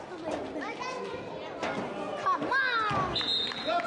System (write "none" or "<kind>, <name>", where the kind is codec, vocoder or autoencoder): none